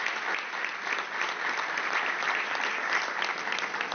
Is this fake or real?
real